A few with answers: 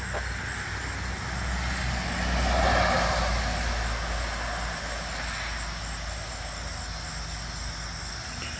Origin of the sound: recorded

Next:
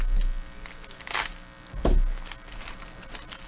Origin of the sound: recorded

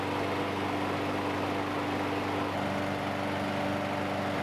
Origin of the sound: recorded